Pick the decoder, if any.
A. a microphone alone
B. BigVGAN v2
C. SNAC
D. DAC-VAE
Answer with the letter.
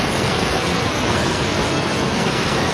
C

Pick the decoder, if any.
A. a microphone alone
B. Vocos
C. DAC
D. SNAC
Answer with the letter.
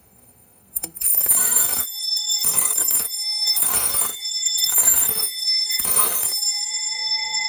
D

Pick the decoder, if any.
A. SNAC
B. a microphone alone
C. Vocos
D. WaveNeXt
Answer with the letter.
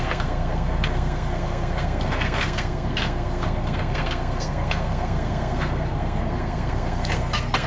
A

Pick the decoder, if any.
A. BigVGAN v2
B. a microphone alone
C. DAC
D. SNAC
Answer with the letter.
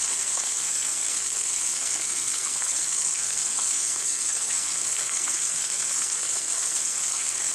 D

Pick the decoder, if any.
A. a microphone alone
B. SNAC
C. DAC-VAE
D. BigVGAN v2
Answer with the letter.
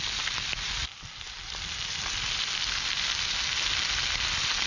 A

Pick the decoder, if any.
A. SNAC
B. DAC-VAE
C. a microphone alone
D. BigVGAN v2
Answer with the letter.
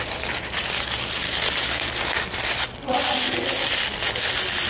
C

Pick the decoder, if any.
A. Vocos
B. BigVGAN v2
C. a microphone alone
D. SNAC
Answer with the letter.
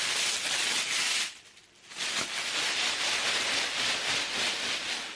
C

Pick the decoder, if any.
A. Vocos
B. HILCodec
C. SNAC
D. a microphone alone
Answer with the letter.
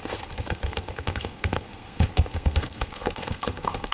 C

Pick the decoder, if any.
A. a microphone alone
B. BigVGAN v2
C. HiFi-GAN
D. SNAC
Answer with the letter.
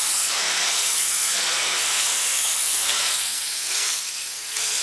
D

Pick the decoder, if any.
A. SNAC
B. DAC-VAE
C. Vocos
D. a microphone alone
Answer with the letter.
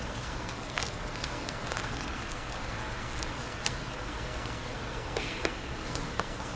A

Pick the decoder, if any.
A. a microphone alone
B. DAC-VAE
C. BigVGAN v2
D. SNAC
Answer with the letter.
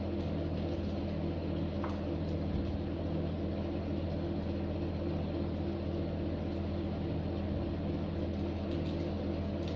A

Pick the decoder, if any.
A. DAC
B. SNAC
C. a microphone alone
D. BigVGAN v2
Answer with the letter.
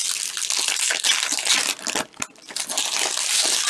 C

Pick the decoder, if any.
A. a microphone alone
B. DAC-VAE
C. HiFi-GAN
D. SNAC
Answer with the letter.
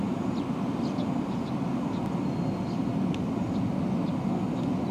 A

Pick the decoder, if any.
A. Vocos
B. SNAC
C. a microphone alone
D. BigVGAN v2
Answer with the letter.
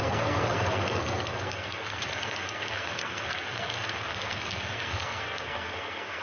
B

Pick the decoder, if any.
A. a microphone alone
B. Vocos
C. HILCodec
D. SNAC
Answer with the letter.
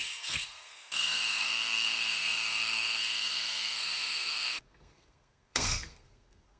D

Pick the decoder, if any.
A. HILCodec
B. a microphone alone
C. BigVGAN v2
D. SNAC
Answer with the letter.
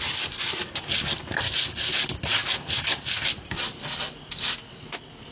B